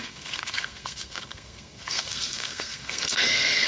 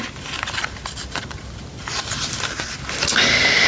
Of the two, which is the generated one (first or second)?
first